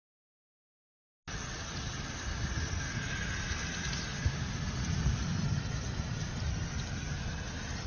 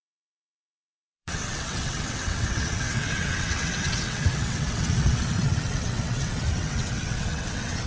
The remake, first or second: second